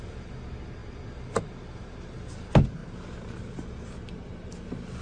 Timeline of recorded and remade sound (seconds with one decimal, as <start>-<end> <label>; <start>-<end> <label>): 0.0-5.0 recorded